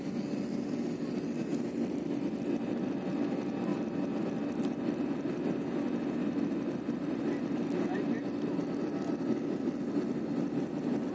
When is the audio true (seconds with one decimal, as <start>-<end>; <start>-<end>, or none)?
0.0-11.1

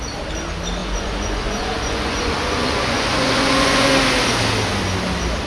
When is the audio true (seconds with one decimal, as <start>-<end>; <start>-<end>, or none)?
0.0-0.8; 3.9-5.5

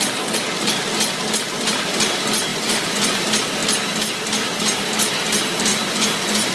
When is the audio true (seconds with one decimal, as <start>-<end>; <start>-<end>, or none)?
0.0-2.5; 3.2-5.7

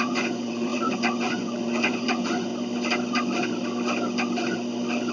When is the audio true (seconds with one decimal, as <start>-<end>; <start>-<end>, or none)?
2.5-5.1

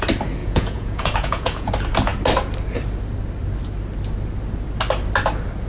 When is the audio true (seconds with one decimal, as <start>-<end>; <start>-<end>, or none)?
0.0-0.4; 1.7-5.7

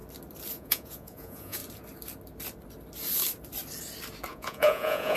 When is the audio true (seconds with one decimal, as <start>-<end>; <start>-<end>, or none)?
0.0-0.5; 1.6-4.3

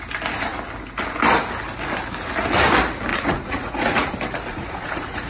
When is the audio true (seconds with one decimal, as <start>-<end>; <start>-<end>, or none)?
0.0-3.1; 4.1-4.5

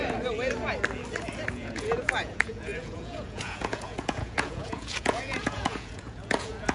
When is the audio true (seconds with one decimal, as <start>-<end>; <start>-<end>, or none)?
0.0-1.5